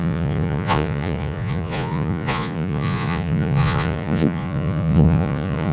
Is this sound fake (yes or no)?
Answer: yes